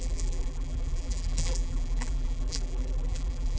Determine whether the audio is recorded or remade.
remade